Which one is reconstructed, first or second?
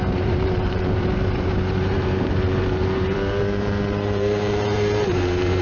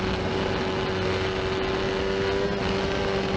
first